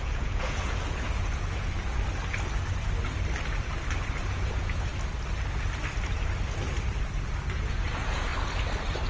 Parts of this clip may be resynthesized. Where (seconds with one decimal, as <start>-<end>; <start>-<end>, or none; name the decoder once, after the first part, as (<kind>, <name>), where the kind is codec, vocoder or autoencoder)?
0.0-1.9 (vocoder, Vocos); 4.2-4.9; 7.5-8.3